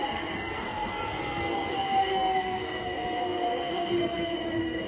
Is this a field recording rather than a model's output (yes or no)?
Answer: no